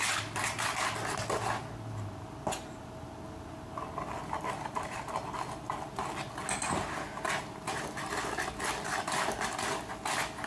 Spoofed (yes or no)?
no